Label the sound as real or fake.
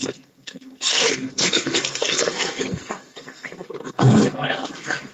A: fake